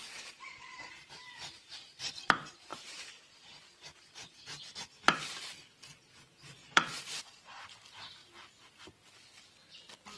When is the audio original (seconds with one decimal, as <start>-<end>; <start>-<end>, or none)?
0.9-2.7; 3.6-6.6; 7.6-10.2